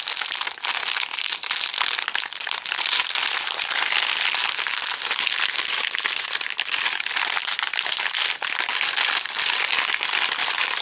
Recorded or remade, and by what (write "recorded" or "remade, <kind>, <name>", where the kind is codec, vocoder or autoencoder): recorded